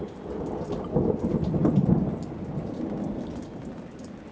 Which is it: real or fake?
real